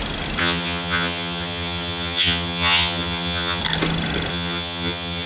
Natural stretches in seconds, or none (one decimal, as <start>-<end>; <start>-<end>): 0.0-0.4; 3.6-4.3